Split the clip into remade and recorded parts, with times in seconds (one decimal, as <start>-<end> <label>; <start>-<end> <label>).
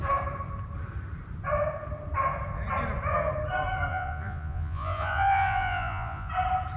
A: 0.0-3.9 recorded; 3.9-6.3 remade; 6.3-6.8 recorded